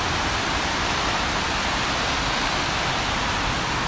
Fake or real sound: real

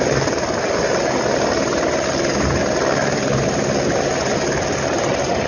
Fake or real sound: real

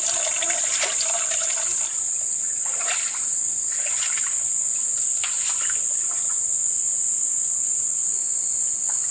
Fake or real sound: real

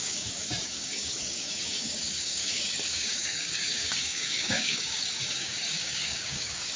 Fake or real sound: fake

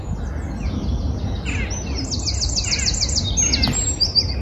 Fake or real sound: real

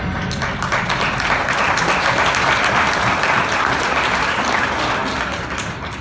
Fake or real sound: real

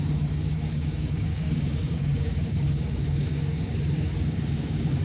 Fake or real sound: fake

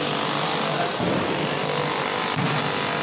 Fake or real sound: real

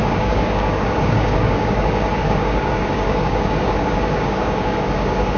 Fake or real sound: fake